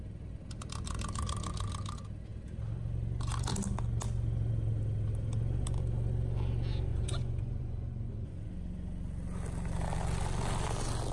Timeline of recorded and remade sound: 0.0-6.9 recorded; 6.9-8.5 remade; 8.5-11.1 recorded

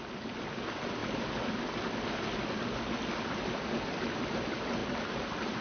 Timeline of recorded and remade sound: 0.0-5.6 recorded

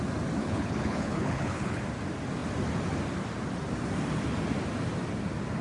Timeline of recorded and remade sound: 0.0-0.4 recorded; 0.4-1.8 remade; 1.8-5.6 recorded

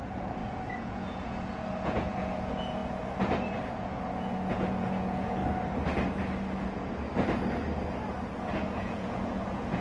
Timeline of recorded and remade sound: 0.0-2.8 remade; 2.8-3.7 recorded; 3.7-5.4 remade; 5.4-8.5 recorded; 8.5-9.8 remade